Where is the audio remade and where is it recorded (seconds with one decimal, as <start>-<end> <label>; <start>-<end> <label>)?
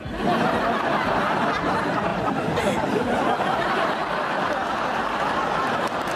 0.0-2.1 recorded; 2.1-3.9 remade; 3.9-6.2 recorded